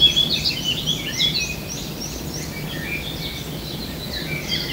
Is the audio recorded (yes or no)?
yes